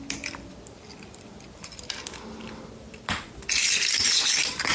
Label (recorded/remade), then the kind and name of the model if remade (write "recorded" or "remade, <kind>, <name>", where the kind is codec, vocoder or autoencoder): recorded